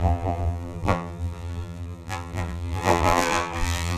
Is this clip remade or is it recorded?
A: remade